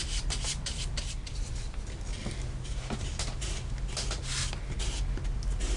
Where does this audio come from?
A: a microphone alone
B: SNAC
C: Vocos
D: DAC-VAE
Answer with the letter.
A